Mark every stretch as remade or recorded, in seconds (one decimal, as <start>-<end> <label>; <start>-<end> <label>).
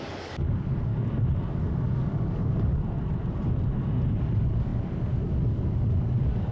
0.0-0.9 remade; 0.9-1.5 recorded; 1.5-2.7 remade; 2.7-4.2 recorded; 4.2-6.5 remade